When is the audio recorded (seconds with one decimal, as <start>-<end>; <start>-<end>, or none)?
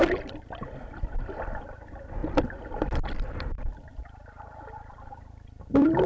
none